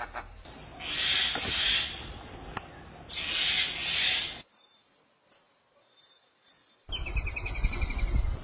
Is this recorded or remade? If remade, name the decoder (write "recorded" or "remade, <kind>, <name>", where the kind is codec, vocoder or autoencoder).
recorded